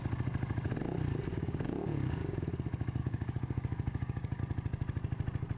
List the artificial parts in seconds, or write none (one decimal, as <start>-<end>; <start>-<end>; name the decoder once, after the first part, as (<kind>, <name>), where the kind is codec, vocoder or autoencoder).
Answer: 1.3-2.4 (codec, DAC); 3.0-4.4